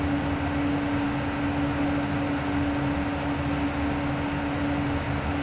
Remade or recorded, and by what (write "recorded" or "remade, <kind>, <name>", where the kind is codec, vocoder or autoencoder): recorded